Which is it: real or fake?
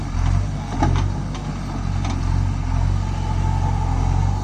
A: real